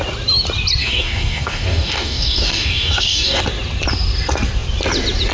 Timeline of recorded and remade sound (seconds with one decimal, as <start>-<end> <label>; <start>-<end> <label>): 0.0-0.8 recorded; 0.8-3.4 remade; 3.4-5.3 recorded

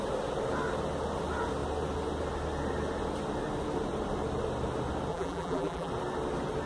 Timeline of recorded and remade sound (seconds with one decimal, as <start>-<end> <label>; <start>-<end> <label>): 0.0-5.1 recorded; 5.1-5.9 remade; 5.9-6.7 recorded

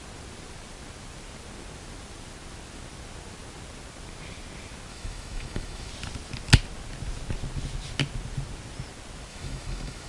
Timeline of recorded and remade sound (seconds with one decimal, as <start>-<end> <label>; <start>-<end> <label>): 0.0-4.9 recorded; 4.9-5.9 remade; 5.9-9.3 recorded; 9.3-10.1 remade

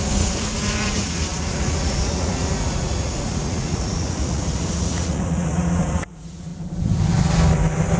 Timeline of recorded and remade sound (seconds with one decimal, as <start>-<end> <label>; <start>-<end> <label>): 0.0-6.5 remade; 6.5-8.0 recorded